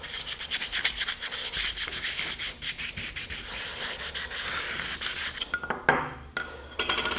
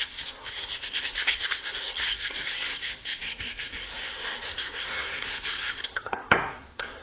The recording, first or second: first